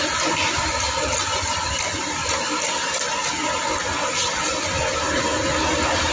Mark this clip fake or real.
real